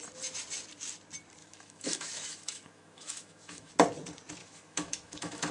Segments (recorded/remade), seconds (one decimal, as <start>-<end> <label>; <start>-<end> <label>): 0.0-1.4 recorded; 1.4-3.7 remade; 3.7-4.4 recorded; 4.4-5.5 remade